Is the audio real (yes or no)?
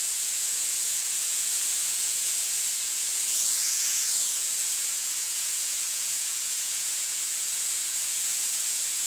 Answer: no